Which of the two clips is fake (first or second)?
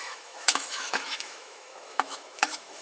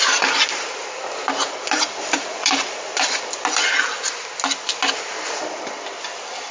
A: first